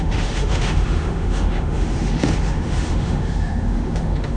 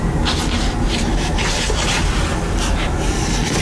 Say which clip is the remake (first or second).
first